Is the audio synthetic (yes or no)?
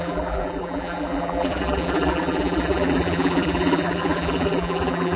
yes